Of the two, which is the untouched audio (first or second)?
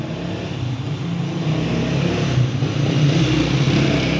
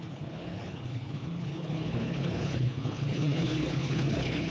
first